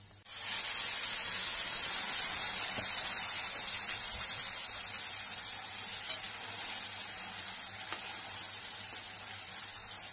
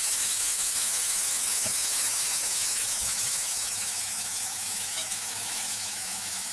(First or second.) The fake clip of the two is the second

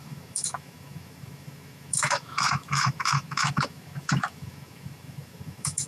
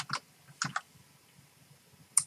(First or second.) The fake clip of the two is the first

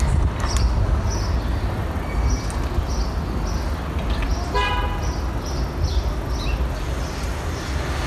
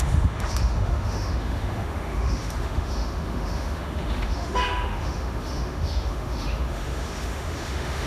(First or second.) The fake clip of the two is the second